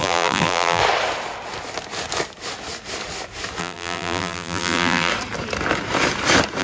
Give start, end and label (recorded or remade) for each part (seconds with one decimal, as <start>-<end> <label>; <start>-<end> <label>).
0.0-0.8 remade; 0.8-3.6 recorded; 3.6-5.1 remade; 5.1-6.6 recorded